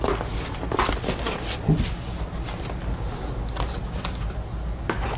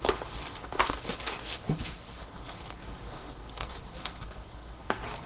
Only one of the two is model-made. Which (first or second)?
second